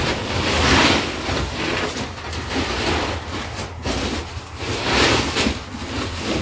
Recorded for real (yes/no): yes